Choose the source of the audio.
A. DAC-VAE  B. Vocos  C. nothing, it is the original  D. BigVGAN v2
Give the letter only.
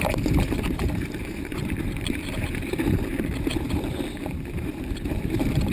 D